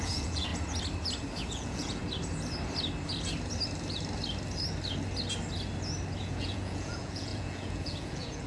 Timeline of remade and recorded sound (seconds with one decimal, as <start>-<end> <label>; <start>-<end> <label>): 0.0-0.5 remade; 0.5-1.5 recorded; 1.5-2.0 remade; 2.0-6.2 recorded; 6.2-8.5 remade